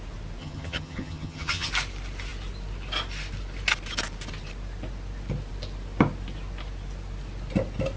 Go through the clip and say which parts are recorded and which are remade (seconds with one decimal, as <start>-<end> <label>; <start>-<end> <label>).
0.0-0.4 recorded; 0.4-1.7 remade; 1.7-8.0 recorded